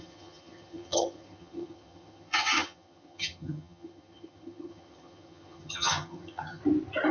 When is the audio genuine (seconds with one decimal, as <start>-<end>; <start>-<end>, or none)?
6.6-7.1